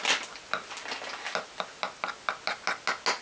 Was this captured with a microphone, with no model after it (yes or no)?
yes